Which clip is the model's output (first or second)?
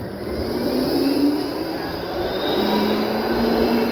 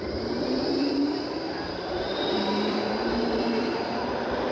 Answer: second